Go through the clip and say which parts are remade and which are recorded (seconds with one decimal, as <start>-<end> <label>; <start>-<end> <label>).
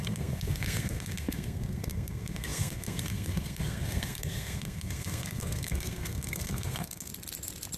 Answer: 0.0-7.1 remade; 7.1-7.8 recorded